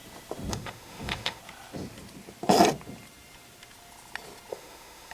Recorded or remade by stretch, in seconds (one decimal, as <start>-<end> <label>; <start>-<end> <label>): 0.0-0.5 recorded; 0.5-1.4 remade; 1.4-4.5 recorded; 4.5-5.1 remade